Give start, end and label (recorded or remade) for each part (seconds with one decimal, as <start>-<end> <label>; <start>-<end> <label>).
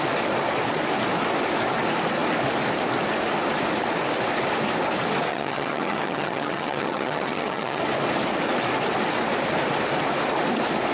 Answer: 0.0-5.3 recorded; 5.3-7.8 remade; 7.8-10.9 recorded